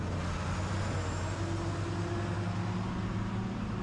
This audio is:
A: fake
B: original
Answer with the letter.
B